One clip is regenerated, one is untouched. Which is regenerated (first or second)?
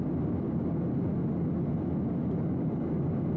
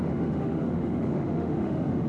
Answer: second